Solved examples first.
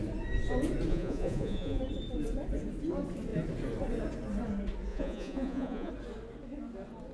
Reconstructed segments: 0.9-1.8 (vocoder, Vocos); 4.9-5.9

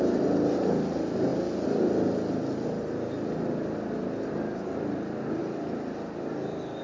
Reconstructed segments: none

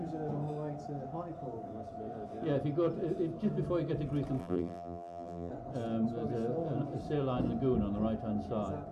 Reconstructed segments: 4.4-5.5 (vocoder, BigVGAN v2)

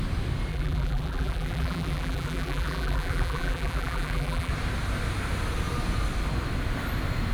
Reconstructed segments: 0.5-4.5 (vocoder, BigVGAN v2)

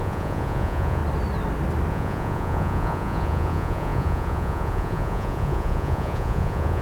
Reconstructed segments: 0.0-1.0 (vocoder, Vocos); 1.9-6.8

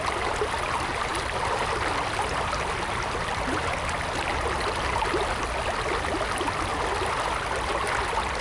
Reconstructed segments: none

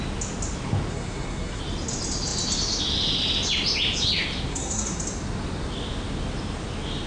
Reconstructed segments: 0.9-1.6 (codec, SNAC); 4.5-5.0

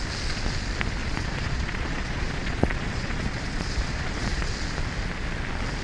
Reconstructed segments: 1.0-4.5 (vocoder, Vocos)